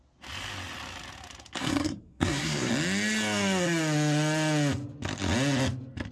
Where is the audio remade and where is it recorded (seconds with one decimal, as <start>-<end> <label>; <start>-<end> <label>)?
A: 0.0-1.6 recorded; 1.6-2.7 remade; 2.7-6.1 recorded